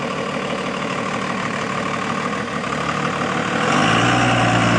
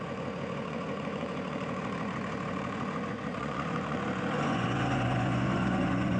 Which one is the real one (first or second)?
first